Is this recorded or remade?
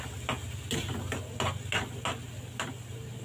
recorded